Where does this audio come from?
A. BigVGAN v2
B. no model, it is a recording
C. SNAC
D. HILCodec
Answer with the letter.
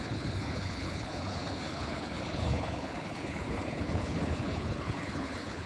D